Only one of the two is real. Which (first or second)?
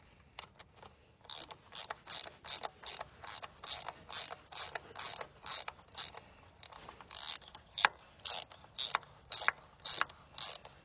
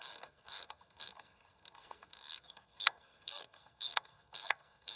first